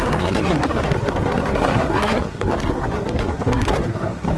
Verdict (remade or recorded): remade